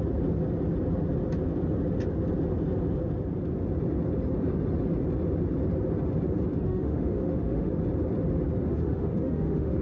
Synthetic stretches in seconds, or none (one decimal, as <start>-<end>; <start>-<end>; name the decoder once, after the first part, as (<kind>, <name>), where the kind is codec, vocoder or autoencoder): 6.5-7.7 (autoencoder, DAC-VAE); 8.7-9.8